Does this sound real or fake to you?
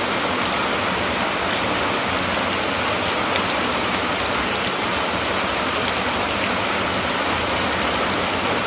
real